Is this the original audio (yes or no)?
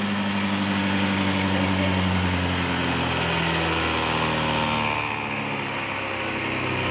yes